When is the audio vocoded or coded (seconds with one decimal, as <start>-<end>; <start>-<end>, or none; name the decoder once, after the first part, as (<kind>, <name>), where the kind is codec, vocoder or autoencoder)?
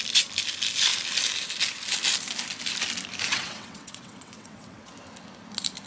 3.3-4.9 (vocoder, WaveNeXt)